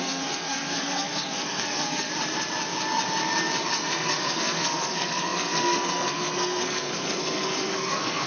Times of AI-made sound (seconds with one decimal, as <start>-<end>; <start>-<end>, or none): 0.0-2.1; 3.7-8.3